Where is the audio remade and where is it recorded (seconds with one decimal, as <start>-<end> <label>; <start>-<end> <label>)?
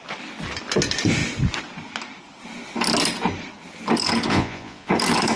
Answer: 0.0-4.3 recorded; 4.3-4.9 remade; 4.9-5.4 recorded